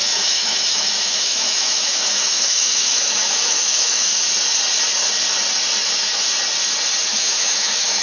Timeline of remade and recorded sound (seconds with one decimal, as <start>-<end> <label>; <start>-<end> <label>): 0.0-4.1 remade; 4.1-7.1 recorded; 7.1-8.0 remade